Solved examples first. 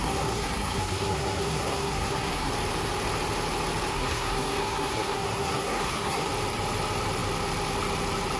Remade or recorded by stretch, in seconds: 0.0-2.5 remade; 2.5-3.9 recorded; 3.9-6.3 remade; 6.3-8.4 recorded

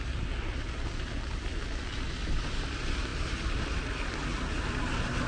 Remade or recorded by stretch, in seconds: 0.0-5.3 recorded

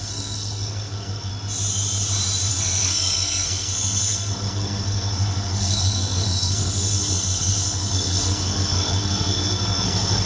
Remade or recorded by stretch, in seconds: 0.0-1.3 remade; 1.3-2.5 recorded; 2.5-10.3 remade

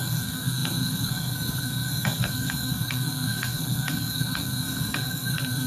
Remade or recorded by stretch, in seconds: 0.0-5.7 remade

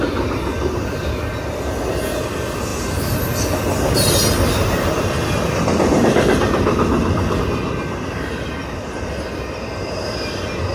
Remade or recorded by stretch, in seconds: 0.0-10.7 recorded

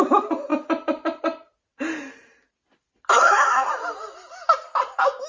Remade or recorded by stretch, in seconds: 0.0-3.1 recorded; 3.1-3.7 remade; 3.7-5.3 recorded

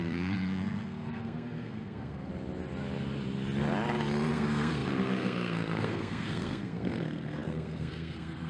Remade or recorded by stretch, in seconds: 0.0-2.3 remade; 2.3-4.3 recorded; 4.3-8.5 remade

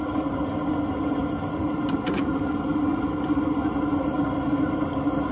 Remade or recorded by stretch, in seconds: 0.0-5.3 recorded